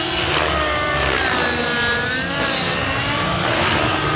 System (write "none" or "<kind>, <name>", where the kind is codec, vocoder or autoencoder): none